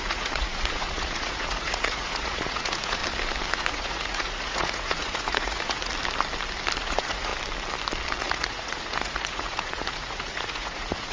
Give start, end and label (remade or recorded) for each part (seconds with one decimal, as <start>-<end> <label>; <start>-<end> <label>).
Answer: 0.0-3.0 remade; 3.0-3.5 recorded; 3.5-5.9 remade; 5.9-6.8 recorded; 6.8-7.3 remade; 7.3-8.2 recorded; 8.2-11.1 remade

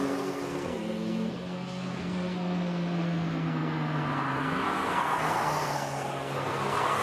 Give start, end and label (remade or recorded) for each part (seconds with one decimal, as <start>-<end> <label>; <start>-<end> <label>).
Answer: 0.0-7.0 remade